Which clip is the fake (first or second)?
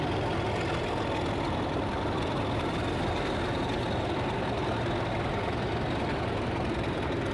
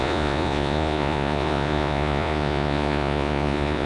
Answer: second